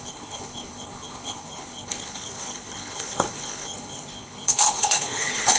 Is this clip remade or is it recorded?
remade